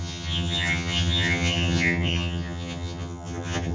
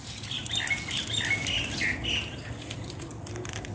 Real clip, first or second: second